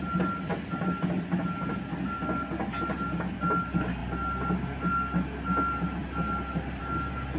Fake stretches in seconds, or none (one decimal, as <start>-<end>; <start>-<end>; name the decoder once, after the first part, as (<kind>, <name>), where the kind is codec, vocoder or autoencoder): none